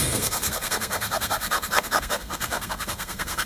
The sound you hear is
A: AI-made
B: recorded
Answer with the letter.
A